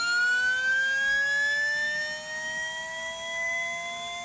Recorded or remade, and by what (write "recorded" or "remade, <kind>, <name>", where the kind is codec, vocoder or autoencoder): recorded